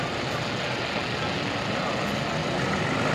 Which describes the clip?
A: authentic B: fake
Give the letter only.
A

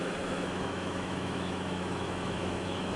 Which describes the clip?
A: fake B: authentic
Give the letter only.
A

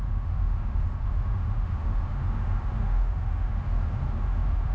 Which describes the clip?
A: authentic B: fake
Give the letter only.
B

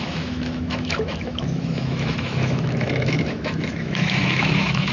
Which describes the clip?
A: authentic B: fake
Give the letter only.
B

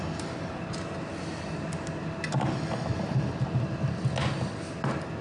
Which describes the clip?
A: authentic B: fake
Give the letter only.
A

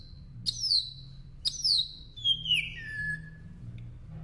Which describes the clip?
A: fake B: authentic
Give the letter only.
B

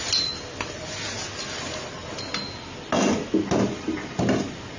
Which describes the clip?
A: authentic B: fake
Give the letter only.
A